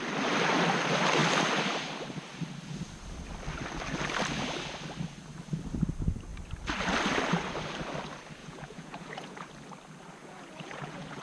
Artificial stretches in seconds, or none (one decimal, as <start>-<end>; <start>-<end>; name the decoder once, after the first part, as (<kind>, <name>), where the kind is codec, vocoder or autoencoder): 8.4-9.5 (vocoder, Vocos); 10.2-11.2